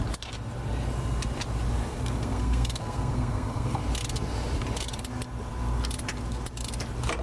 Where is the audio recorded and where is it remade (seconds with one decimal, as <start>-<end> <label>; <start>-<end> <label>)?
0.0-1.9 recorded; 1.9-3.8 remade; 3.8-7.2 recorded